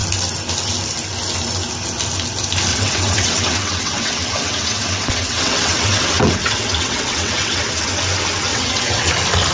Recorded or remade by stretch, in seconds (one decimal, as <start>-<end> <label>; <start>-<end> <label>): 0.0-2.7 recorded; 2.7-7.9 remade; 7.9-8.5 recorded; 8.5-9.1 remade; 9.1-9.5 recorded